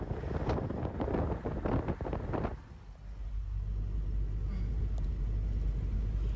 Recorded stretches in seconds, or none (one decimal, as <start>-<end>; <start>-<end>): 0.0-6.4